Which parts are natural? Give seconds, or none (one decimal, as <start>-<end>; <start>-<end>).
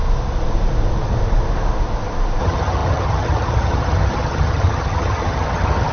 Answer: 0.0-2.4